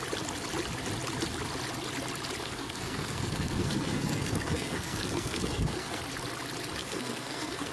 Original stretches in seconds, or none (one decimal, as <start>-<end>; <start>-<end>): 0.0-2.4; 6.0-6.8